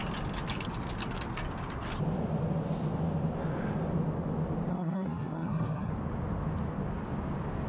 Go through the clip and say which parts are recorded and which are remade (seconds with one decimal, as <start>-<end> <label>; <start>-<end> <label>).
0.0-4.7 recorded; 4.7-5.9 remade; 5.9-7.7 recorded